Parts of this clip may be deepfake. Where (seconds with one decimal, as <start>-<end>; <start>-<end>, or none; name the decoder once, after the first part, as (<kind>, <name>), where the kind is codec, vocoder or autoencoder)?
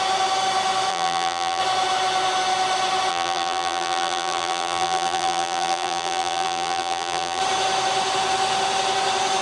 0.9-1.6 (vocoder, BigVGAN v2); 3.1-7.4